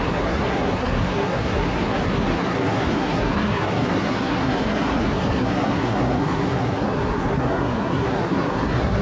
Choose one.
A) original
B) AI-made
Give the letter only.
B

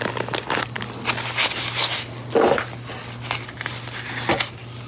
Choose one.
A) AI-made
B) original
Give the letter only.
B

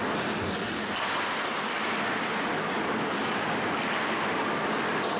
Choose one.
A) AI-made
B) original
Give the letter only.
B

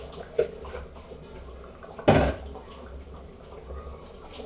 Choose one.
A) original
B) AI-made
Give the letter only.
A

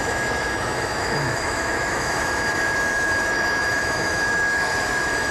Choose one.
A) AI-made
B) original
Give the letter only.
A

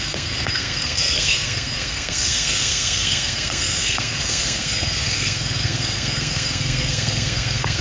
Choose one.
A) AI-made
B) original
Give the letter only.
A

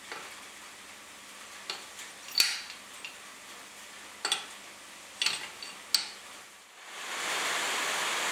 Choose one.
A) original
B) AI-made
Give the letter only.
A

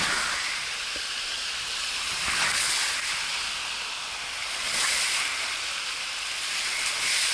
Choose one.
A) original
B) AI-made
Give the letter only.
A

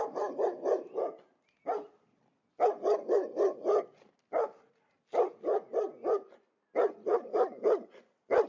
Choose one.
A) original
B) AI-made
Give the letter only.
A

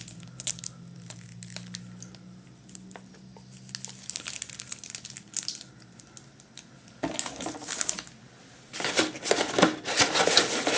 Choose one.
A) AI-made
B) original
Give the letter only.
B